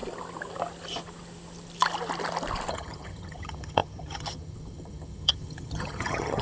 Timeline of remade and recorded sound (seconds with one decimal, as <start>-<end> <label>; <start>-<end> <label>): 0.0-2.7 recorded; 2.7-6.4 remade